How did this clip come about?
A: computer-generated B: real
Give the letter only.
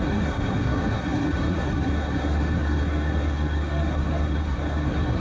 A